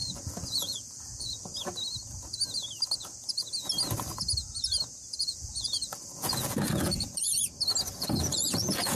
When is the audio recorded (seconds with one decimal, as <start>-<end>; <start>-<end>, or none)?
1.5-5.2; 7.3-7.9